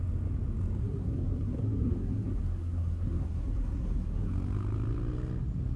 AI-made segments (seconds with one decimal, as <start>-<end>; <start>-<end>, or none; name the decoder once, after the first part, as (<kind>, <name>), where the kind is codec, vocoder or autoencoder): 0.8-4.3 (codec, SNAC)